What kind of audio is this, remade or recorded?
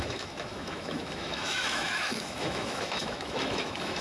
remade